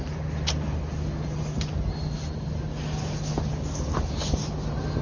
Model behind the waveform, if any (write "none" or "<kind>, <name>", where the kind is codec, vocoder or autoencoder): none